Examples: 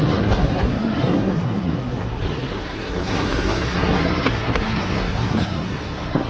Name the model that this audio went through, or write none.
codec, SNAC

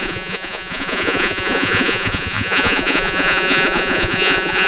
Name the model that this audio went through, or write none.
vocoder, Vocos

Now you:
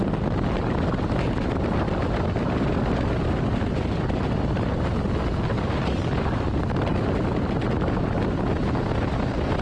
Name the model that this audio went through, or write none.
none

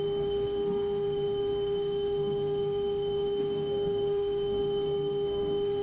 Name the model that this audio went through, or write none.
codec, SNAC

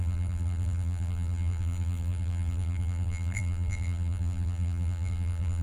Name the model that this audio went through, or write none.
vocoder, BigVGAN v2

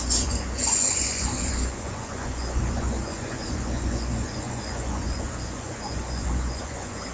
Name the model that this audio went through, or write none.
vocoder, Vocos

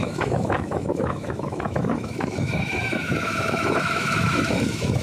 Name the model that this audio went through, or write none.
autoencoder, DAC-VAE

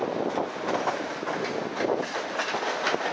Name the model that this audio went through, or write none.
none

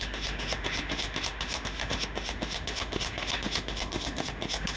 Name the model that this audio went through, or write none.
autoencoder, DAC-VAE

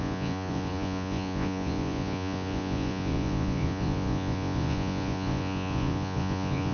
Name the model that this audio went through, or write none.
vocoder, Vocos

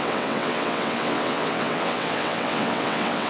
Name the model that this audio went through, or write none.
vocoder, WaveNeXt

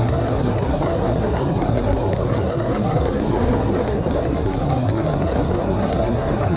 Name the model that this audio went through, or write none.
codec, SNAC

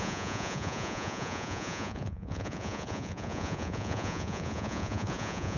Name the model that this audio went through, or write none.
vocoder, Vocos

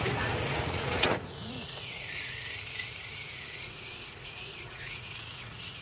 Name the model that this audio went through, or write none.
vocoder, Vocos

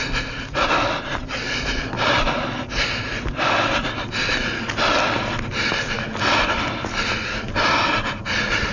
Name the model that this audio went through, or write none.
none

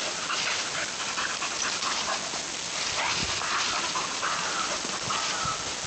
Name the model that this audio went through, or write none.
none